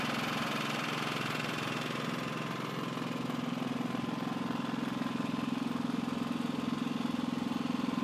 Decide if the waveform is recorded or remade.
recorded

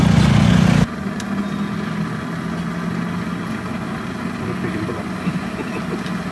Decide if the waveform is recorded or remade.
recorded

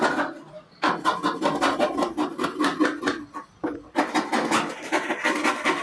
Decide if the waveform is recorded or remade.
recorded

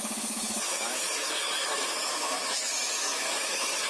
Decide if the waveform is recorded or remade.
remade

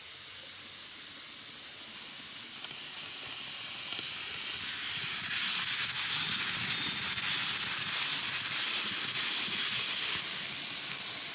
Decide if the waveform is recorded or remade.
recorded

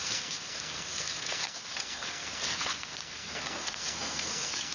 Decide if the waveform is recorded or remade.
remade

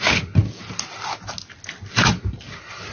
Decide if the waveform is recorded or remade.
recorded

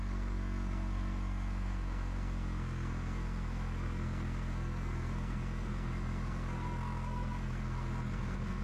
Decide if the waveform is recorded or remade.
remade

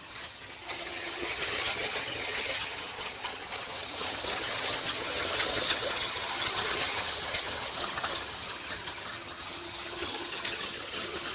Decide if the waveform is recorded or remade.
remade